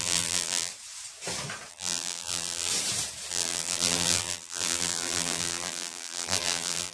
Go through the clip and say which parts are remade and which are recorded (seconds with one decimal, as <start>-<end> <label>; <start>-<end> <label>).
0.0-0.7 remade; 0.7-1.7 recorded; 1.7-2.7 remade; 2.7-3.3 recorded; 3.3-6.9 remade